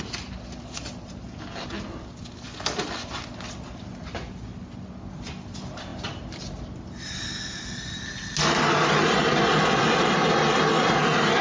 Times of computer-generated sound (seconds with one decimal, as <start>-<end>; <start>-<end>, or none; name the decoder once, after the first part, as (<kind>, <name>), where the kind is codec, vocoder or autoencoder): none